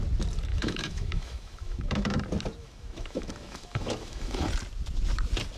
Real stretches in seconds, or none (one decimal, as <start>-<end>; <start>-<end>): 0.0-0.5; 2.2-2.6; 4.5-5.6